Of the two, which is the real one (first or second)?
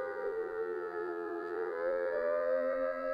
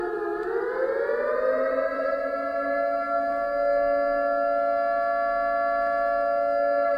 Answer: second